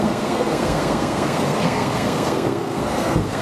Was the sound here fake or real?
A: fake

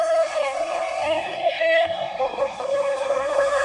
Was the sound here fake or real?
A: fake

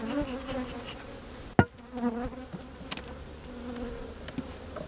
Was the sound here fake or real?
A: real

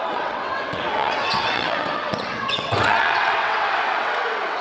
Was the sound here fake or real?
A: fake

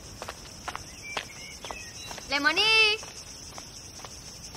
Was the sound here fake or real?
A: real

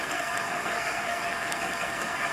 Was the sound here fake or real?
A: fake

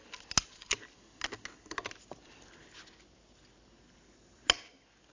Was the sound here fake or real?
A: real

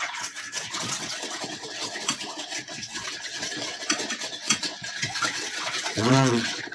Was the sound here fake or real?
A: fake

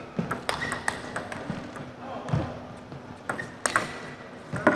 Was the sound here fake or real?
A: real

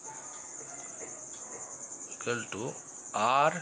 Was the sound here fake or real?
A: real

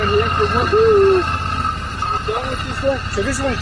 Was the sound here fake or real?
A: real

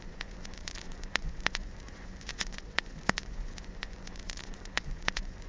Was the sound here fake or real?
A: fake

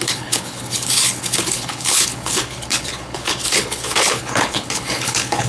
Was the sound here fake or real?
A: fake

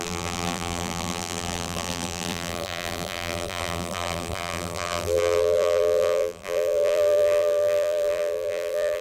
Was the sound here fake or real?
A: fake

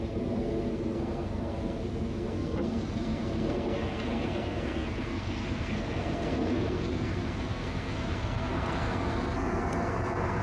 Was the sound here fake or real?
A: fake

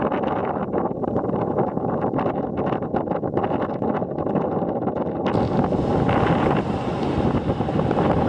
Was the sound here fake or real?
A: real